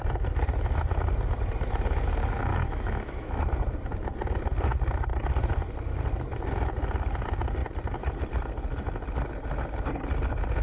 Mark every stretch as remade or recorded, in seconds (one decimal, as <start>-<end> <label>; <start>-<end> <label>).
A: 0.0-2.5 recorded; 2.5-3.3 remade; 3.3-10.6 recorded